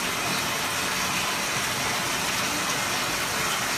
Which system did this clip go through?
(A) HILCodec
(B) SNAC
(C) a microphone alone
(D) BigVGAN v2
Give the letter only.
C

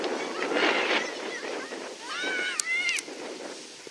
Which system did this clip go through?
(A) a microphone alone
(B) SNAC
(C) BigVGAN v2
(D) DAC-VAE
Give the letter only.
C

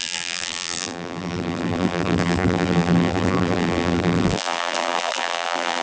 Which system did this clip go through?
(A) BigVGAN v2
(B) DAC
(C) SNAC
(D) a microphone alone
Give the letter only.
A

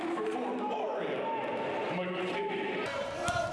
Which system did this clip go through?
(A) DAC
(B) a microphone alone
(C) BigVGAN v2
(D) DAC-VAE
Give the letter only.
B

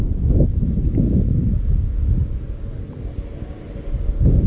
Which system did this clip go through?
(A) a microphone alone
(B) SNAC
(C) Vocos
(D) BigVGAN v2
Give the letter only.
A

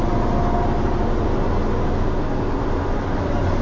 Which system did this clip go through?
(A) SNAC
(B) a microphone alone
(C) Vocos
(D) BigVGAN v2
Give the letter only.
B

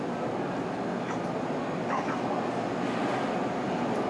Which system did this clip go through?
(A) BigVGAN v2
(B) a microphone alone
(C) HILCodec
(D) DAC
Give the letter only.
B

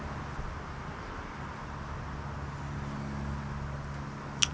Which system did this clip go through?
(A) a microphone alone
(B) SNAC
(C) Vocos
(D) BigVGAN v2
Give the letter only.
A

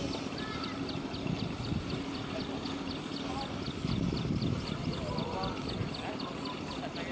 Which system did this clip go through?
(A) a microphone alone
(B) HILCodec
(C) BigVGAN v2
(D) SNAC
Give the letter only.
A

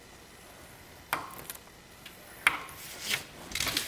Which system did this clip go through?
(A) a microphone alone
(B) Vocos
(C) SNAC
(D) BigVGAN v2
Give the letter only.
A